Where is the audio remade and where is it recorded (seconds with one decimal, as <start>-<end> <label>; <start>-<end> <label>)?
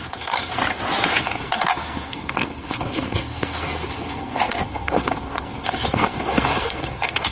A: 0.0-0.6 remade; 0.6-1.2 recorded; 1.2-7.3 remade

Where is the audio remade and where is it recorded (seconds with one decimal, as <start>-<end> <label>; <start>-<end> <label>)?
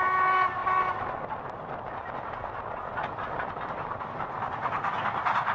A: 0.0-5.5 recorded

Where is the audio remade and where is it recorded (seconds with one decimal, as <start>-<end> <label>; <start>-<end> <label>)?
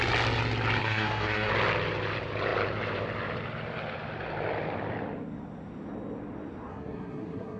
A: 0.0-0.8 recorded; 0.8-1.5 remade; 1.5-6.7 recorded; 6.7-7.6 remade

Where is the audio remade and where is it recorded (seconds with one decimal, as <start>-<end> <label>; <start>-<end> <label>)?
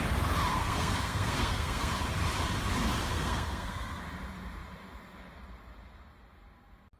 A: 0.0-0.5 recorded; 0.5-1.9 remade; 1.9-3.1 recorded; 3.1-4.0 remade; 4.0-7.0 recorded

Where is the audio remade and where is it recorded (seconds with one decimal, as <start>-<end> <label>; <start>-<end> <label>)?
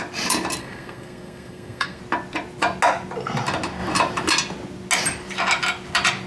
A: 0.0-0.6 recorded; 0.6-2.0 remade; 2.0-6.3 recorded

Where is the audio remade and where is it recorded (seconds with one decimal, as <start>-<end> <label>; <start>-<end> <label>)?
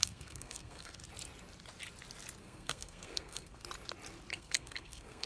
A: 0.0-1.0 remade; 1.0-2.4 recorded; 2.4-3.6 remade; 3.6-4.3 recorded; 4.3-5.3 remade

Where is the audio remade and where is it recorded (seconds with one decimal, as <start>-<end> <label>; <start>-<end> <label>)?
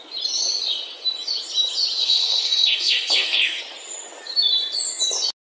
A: 0.0-2.0 recorded; 2.0-3.6 remade; 3.6-5.6 recorded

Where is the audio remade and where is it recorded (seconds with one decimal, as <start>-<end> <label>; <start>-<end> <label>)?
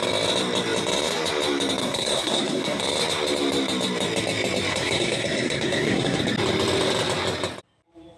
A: 0.0-1.8 recorded; 1.8-2.8 remade; 2.8-4.7 recorded; 4.7-6.2 remade; 6.2-8.2 recorded